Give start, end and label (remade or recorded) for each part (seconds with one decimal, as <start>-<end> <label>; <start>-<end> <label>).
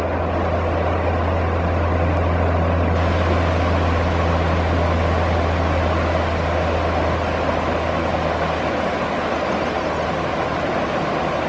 0.0-11.5 recorded